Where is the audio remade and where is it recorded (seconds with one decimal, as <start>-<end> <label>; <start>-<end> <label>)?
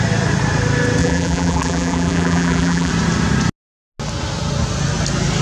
0.0-1.0 recorded; 1.0-2.9 remade; 2.9-5.4 recorded